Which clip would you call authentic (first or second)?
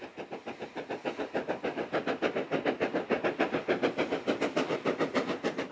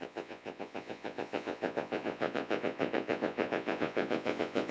first